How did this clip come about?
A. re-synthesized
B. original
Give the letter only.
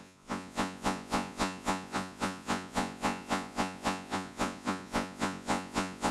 A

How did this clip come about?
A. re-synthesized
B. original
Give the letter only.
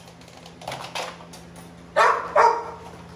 B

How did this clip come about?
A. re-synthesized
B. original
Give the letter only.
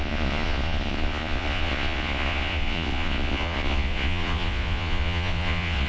A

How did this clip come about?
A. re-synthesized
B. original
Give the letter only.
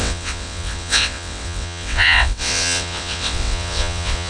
A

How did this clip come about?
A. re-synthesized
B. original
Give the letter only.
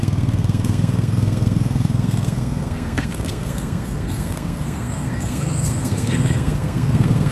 A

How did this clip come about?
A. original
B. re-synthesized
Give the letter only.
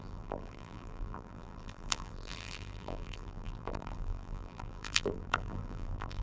B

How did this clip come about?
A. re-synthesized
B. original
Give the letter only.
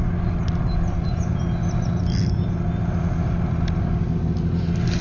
B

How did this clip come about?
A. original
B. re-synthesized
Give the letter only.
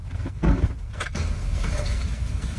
B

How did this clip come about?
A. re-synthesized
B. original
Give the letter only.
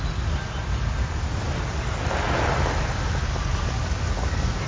B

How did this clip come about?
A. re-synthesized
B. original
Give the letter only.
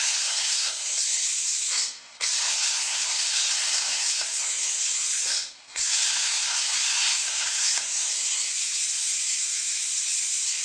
A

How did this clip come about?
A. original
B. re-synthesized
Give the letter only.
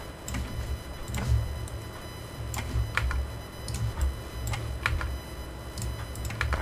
B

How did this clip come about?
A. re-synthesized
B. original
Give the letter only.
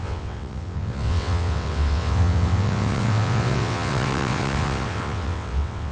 A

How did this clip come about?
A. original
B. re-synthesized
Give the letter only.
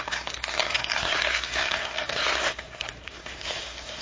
B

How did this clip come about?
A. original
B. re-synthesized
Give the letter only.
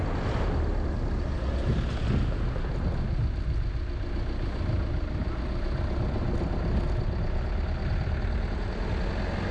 A